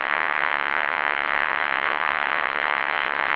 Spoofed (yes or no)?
yes